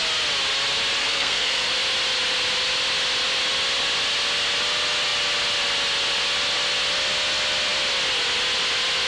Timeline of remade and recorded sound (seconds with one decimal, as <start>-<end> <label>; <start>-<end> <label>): 0.0-1.0 recorded; 1.0-1.7 remade; 1.7-9.1 recorded